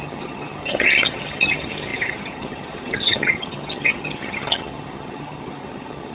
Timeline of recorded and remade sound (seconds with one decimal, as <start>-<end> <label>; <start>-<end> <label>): 0.0-6.1 remade